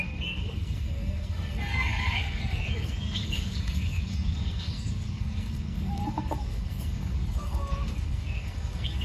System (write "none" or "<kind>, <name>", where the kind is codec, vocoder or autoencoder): codec, SNAC